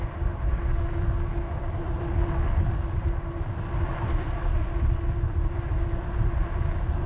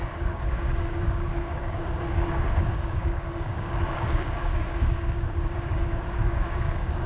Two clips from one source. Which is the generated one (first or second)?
second